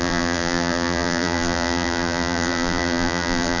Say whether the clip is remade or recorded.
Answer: remade